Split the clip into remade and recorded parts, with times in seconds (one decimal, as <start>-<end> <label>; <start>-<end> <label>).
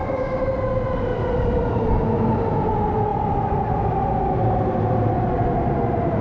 0.0-6.2 recorded